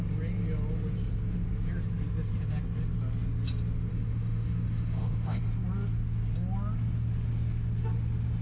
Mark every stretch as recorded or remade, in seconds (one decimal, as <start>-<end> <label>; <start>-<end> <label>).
0.0-3.9 recorded; 3.9-5.4 remade; 5.4-8.4 recorded